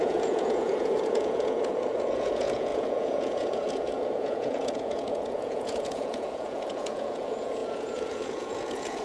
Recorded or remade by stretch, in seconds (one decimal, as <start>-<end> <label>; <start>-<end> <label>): 0.0-9.0 remade